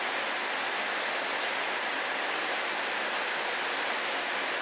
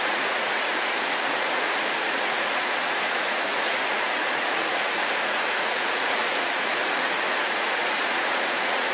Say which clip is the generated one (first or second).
second